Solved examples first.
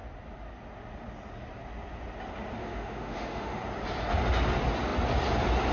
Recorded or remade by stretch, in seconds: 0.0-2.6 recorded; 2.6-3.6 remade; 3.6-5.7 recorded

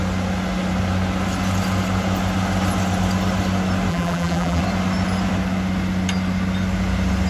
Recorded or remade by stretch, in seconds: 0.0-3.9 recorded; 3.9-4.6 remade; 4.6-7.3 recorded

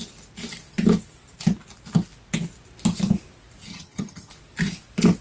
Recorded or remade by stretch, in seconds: 0.0-3.7 recorded; 3.7-4.3 remade; 4.3-5.2 recorded